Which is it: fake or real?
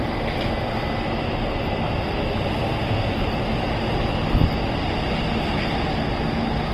real